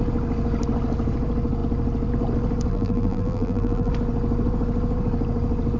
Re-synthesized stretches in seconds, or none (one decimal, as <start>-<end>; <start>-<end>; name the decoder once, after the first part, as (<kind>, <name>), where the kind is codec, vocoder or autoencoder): 2.7-3.9 (vocoder, BigVGAN v2)